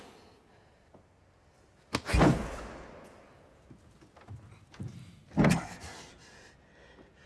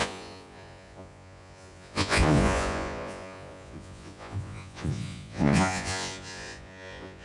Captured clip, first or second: first